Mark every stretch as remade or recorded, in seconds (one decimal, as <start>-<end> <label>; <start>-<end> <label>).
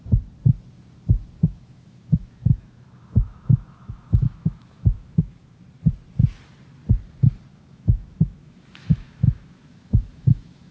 0.0-1.4 recorded; 1.4-5.6 remade; 5.6-7.5 recorded; 7.5-10.7 remade